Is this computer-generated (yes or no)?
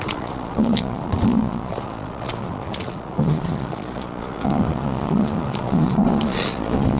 yes